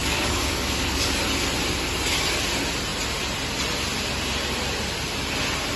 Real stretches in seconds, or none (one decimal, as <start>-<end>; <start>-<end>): 1.2-5.8